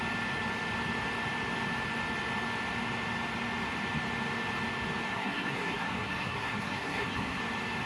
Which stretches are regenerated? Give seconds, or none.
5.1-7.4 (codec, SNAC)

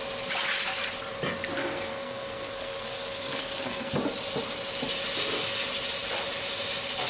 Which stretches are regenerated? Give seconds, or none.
1.6-3.9 (codec, SNAC)

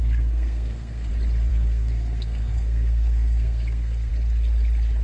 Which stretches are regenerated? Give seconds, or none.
0.0-1.1 (codec, SNAC); 1.5-4.1

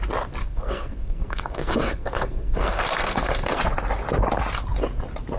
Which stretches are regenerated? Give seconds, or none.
0.4-3.6 (codec, SNAC)

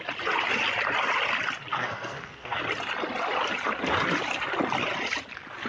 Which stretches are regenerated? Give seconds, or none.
1.7-2.6 (codec, SNAC)

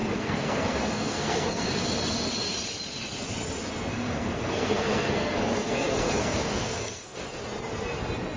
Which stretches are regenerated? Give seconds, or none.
0.0-1.7 (codec, SNAC); 3.9-7.4

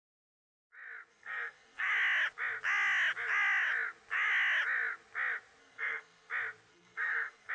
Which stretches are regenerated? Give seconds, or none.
1.1-1.9 (codec, SNAC); 5.6-6.3; 6.7-7.5